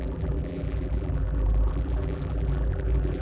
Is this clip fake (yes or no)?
yes